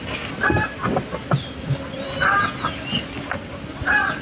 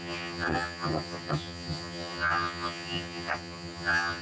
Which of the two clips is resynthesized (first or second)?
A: second